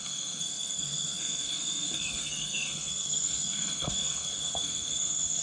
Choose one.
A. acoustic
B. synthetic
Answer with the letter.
B